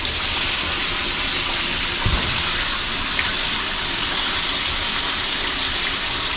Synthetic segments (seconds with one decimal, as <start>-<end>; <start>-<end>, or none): none